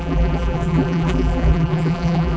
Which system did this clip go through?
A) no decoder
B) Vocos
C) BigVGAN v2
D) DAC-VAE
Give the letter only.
C